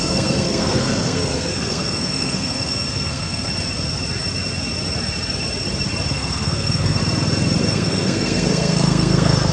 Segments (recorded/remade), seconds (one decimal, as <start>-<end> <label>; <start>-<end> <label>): 0.0-3.5 remade; 3.5-6.1 recorded; 6.1-7.0 remade; 7.0-7.6 recorded; 7.6-9.5 remade